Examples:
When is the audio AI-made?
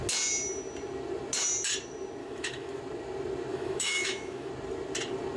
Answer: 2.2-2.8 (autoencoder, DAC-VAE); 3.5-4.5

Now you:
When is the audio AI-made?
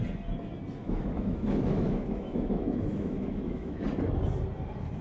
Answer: 0.8-3.8 (autoencoder, DAC-VAE)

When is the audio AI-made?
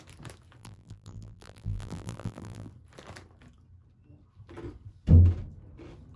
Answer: 0.6-2.7 (vocoder, BigVGAN v2)